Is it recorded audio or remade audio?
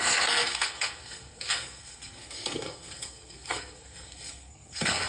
remade